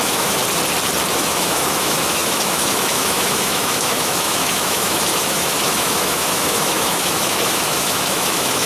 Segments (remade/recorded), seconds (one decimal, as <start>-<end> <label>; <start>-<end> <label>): 0.0-0.4 remade; 0.4-1.1 recorded; 1.1-8.7 remade